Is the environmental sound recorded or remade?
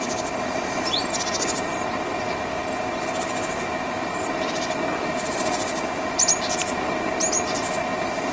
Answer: recorded